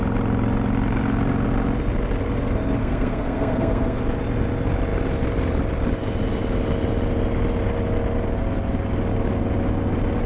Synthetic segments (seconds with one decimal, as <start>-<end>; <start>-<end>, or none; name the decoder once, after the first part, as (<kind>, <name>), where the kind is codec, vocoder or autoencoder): 2.8-4.0 (codec, SNAC)